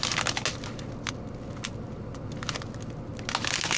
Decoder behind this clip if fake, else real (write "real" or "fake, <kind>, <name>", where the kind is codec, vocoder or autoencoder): real